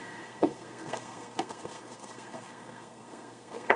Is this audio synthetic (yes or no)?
yes